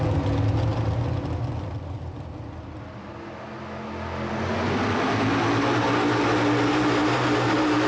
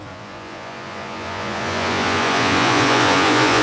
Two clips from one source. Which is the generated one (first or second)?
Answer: second